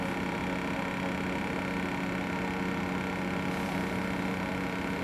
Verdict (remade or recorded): recorded